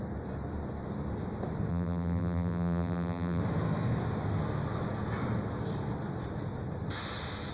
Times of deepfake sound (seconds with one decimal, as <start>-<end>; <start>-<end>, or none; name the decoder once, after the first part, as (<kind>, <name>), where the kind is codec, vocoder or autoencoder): 1.7-3.4 (vocoder, BigVGAN v2)